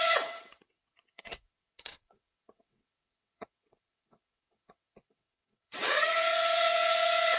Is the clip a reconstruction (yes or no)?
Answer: yes